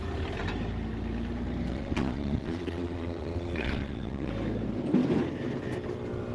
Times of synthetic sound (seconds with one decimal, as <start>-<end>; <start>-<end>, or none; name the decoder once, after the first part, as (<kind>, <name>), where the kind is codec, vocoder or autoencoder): 1.7-4.3 (vocoder, Vocos)